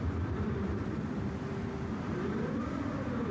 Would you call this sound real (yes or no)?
no